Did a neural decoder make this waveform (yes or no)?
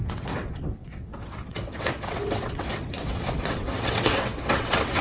yes